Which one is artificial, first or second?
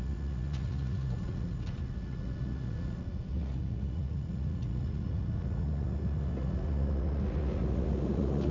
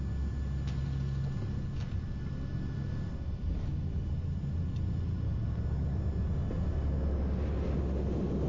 first